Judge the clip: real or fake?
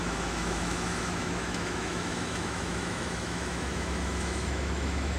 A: fake